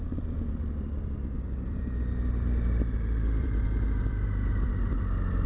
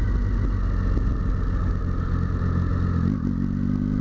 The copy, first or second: first